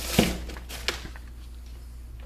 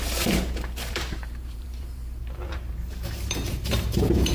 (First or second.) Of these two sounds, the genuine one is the first